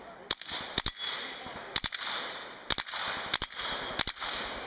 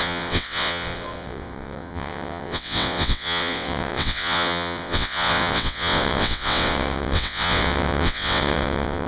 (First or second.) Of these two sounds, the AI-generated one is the second